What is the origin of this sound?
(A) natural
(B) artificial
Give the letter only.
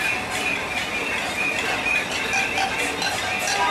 A